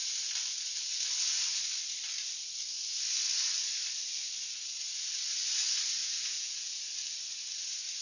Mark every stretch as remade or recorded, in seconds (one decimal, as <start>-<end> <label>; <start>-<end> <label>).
0.0-6.0 recorded; 6.0-6.8 remade; 6.8-8.0 recorded